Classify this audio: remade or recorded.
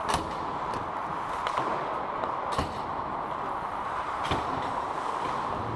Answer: recorded